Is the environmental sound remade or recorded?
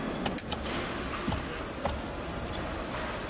recorded